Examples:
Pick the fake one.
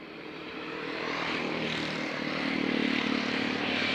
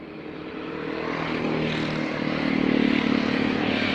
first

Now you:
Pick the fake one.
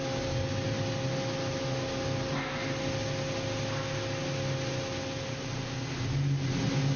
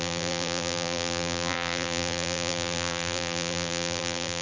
second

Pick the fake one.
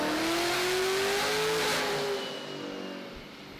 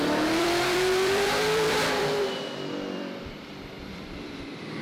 second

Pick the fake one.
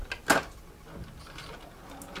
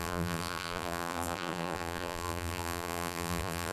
second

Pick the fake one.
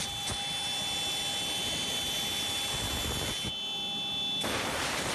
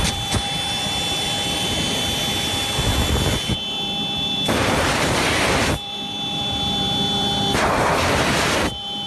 second